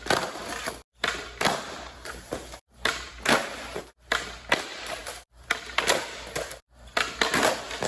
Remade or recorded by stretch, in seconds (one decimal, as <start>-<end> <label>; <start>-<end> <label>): 0.0-0.9 recorded; 0.9-3.8 remade; 3.8-7.9 recorded